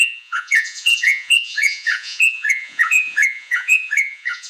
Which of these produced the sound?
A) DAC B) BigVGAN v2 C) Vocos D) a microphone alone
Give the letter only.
C